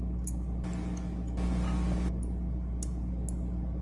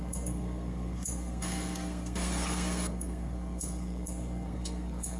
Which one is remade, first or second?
second